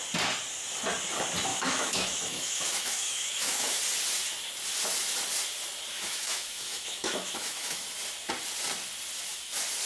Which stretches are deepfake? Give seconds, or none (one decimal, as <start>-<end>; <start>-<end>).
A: 1.5-3.8; 5.9-7.8